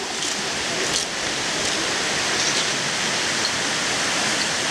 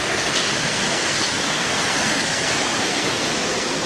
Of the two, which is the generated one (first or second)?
second